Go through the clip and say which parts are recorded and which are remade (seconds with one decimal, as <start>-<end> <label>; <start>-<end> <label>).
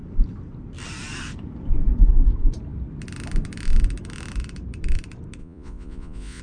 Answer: 0.0-5.4 recorded; 5.4-6.4 remade